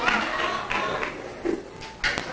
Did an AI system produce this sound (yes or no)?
no